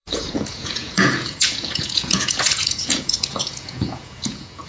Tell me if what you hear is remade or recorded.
remade